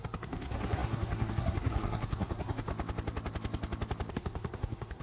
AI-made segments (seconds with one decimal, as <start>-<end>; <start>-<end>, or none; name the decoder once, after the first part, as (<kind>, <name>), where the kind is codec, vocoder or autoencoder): 0.0-2.7 (codec, SNAC); 4.1-5.0

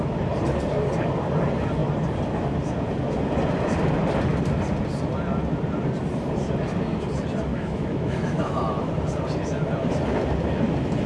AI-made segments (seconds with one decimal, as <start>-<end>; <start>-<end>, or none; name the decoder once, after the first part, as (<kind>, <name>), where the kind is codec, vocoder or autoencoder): 7.5-8.9 (autoencoder, DAC-VAE)